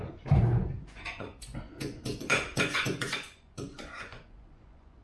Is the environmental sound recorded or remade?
remade